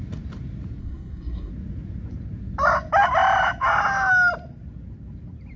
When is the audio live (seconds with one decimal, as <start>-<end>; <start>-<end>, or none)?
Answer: 0.0-0.8; 1.5-5.6